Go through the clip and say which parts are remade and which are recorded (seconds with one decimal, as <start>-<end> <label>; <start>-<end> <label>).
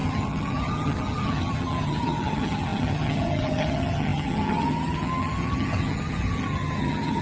0.0-7.2 remade